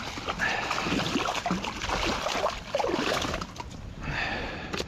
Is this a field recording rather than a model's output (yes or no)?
yes